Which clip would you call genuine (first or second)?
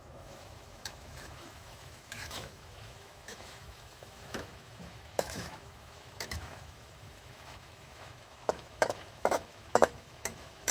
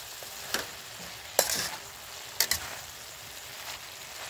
second